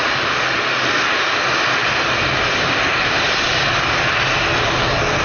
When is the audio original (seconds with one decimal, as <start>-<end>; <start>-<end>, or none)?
0.0-1.8; 4.0-5.2